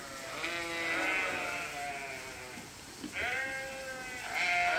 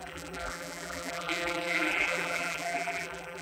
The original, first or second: first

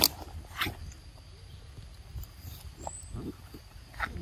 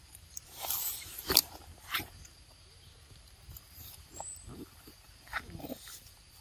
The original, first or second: first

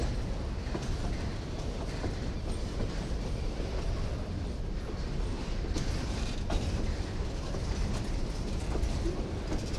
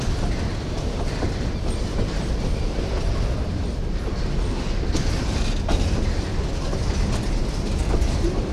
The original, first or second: second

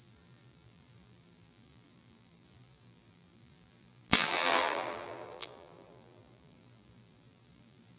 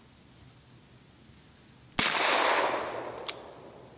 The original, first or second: second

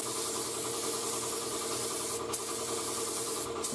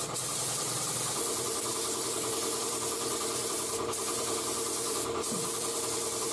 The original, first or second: first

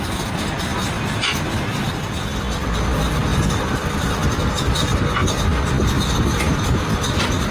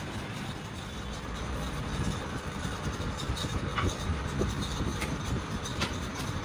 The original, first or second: first